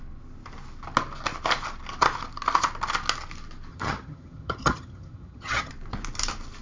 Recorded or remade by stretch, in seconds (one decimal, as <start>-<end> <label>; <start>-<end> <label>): 0.0-3.7 recorded; 3.7-5.7 remade; 5.7-6.6 recorded